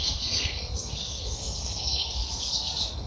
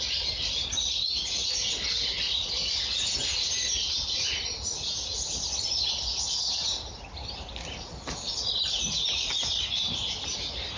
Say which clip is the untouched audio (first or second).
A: second